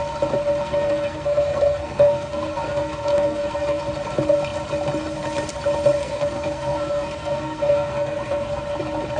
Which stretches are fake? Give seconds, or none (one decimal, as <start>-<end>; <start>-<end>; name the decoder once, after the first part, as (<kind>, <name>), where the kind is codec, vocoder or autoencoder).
0.6-3.8 (codec, SNAC); 6.0-8.6